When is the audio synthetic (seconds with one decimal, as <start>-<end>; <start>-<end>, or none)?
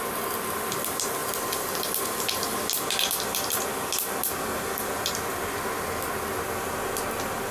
none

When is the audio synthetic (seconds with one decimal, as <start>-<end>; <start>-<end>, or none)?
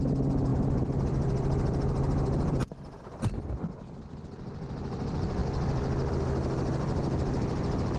0.5-3.0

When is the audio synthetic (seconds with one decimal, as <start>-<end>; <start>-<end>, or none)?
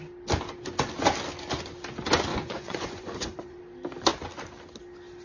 2.3-3.6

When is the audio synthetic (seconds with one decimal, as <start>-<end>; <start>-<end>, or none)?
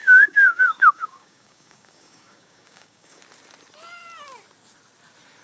0.0-3.2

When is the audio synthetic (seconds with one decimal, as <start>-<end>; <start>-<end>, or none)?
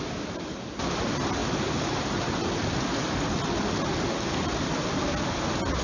1.4-2.4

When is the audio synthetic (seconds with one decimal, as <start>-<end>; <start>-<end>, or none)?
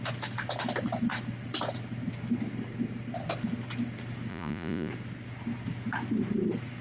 4.3-4.9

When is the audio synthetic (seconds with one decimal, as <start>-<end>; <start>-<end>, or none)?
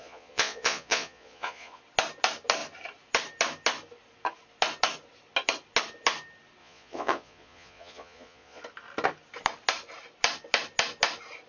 0.0-1.8; 6.6-8.6